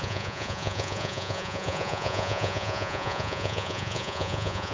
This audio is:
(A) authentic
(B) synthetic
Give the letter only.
B